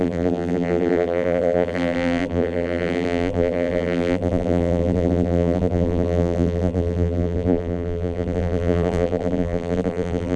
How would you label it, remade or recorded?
remade